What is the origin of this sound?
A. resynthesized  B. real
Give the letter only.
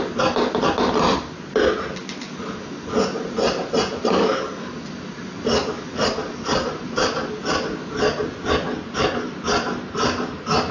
B